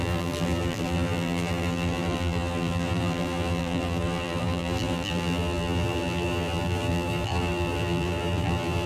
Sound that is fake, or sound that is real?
fake